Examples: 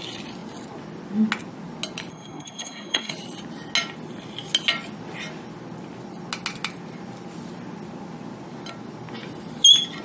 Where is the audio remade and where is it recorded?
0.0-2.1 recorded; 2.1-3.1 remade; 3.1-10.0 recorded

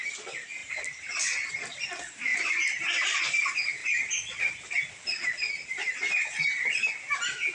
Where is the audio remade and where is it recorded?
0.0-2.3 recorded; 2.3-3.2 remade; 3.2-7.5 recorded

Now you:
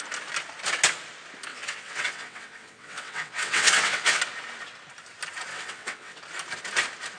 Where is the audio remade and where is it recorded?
0.0-1.5 recorded; 1.5-4.2 remade; 4.2-5.5 recorded; 5.5-6.2 remade; 6.2-7.2 recorded

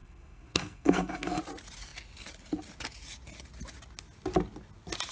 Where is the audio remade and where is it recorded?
0.0-1.4 remade; 1.4-5.1 recorded

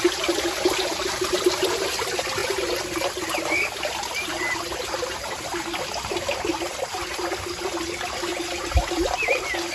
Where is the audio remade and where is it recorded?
0.0-9.7 recorded

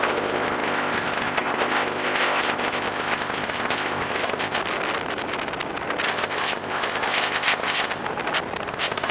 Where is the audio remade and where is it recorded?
0.0-4.6 remade; 4.6-6.1 recorded; 6.1-8.0 remade; 8.0-8.7 recorded; 8.7-9.1 remade

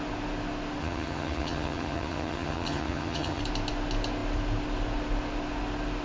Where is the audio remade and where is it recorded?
0.0-0.8 recorded; 0.8-3.4 remade; 3.4-6.0 recorded

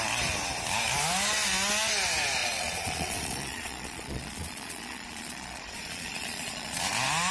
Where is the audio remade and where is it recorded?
0.0-2.4 recorded; 2.4-6.8 remade; 6.8-7.3 recorded